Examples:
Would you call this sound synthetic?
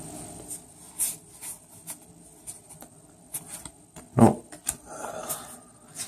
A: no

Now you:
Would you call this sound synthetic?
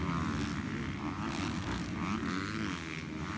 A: no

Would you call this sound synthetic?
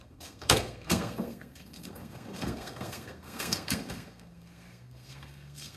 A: yes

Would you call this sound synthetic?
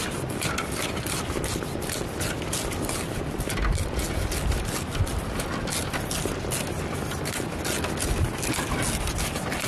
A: no